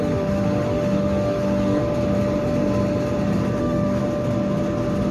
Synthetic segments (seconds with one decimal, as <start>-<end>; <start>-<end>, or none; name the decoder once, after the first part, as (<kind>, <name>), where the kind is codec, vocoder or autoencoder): 0.0-1.8 (autoencoder, DAC-VAE); 3.6-4.0